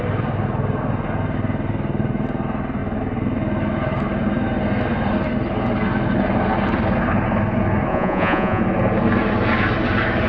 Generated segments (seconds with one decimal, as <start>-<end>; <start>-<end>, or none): 7.9-8.6